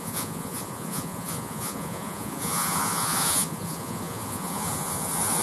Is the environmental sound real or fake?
fake